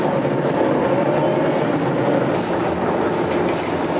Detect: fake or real real